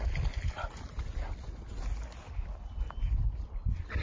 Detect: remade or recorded recorded